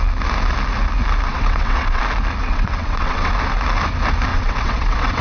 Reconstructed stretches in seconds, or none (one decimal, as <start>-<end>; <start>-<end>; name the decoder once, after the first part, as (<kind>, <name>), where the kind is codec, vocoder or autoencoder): 1.3-2.0 (vocoder, WaveNeXt); 2.4-3.3; 4.3-5.2